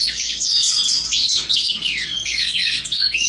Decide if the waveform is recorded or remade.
remade